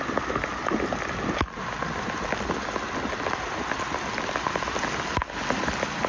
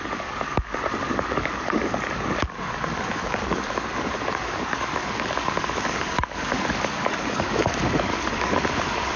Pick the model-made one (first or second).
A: second